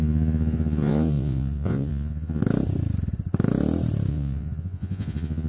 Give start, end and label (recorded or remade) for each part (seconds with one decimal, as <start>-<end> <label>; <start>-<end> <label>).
0.0-2.4 remade; 2.4-4.1 recorded; 4.1-5.5 remade